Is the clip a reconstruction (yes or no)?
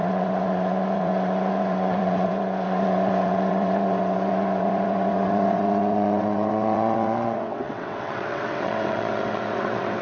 yes